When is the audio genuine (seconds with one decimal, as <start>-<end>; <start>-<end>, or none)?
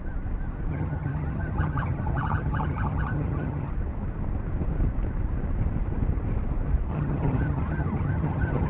0.0-0.7; 3.7-6.9